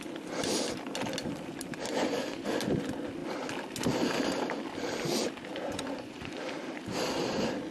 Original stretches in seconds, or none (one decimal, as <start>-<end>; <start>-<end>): 0.0-2.0; 2.5-5.5; 6.5-7.7